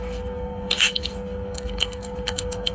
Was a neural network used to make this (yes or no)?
yes